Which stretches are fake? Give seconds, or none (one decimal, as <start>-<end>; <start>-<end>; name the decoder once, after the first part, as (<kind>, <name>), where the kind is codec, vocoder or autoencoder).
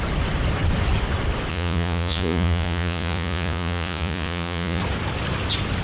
1.5-4.8 (vocoder, Vocos)